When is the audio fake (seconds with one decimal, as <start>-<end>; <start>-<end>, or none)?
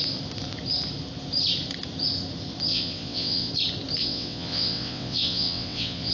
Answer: 2.7-3.5; 4.0-6.1